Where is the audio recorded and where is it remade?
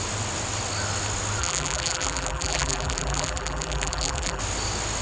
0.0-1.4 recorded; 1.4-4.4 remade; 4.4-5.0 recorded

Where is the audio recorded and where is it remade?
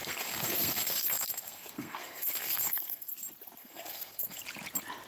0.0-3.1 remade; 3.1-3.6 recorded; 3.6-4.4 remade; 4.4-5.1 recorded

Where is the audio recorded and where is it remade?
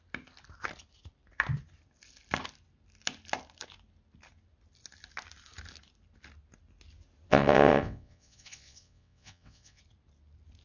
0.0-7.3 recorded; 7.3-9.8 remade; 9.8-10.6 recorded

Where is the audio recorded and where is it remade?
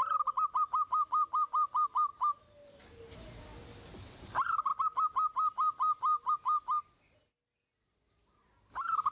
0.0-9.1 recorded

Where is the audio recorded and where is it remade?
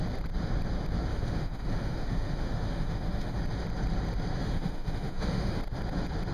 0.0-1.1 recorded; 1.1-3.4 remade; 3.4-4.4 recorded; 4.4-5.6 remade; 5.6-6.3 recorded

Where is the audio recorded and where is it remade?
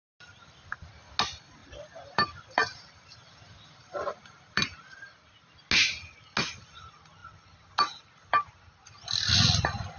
0.0-1.6 recorded; 1.6-5.6 remade; 5.6-10.0 recorded